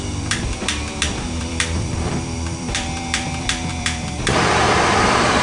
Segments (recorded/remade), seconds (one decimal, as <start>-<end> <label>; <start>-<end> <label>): 0.0-5.4 remade